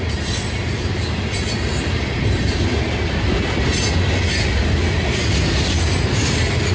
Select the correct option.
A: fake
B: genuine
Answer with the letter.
B